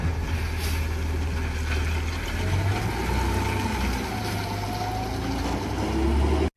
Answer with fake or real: real